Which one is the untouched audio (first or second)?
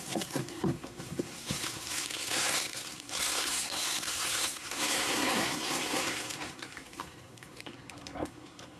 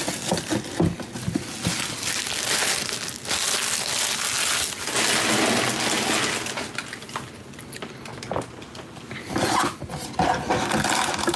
second